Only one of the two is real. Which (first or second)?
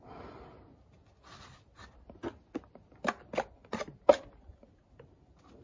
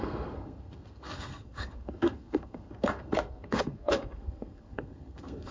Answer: first